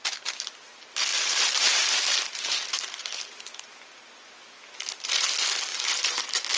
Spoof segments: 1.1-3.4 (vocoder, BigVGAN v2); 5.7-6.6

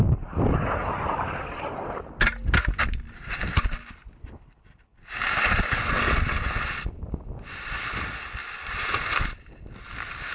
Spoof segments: none

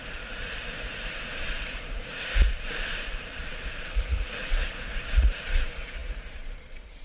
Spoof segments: 0.0-7.0 (vocoder, Vocos)